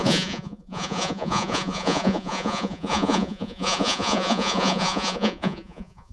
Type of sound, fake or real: fake